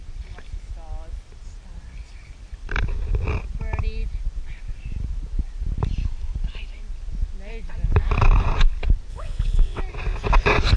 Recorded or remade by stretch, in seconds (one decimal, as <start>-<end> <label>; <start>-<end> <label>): 0.0-9.1 recorded; 9.1-9.8 remade; 9.8-10.8 recorded